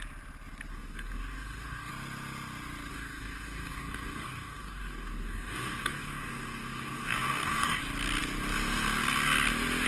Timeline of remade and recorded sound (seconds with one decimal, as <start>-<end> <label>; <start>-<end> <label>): 0.0-0.7 recorded; 0.7-1.9 remade; 1.9-2.9 recorded; 2.9-7.8 remade; 7.8-9.9 recorded